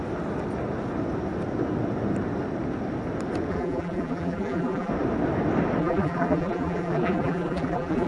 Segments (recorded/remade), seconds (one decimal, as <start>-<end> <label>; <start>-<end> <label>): 0.0-3.5 recorded; 3.5-4.9 remade; 4.9-5.8 recorded; 5.8-8.1 remade